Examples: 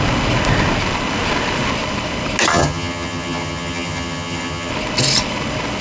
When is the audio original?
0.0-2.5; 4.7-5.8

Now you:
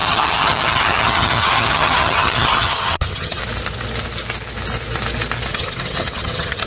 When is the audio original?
3.4-5.5

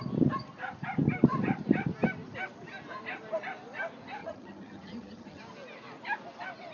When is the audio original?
0.0-4.2; 5.4-6.7

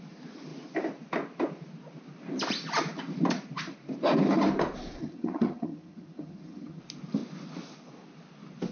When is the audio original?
0.0-5.0; 6.8-8.7

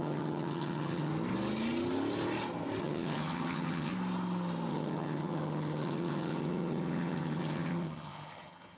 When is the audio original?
1.1-2.8; 3.9-4.7

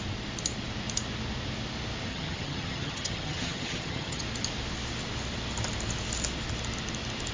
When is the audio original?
0.0-2.1; 4.2-7.3